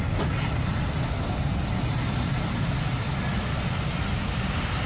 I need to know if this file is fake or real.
real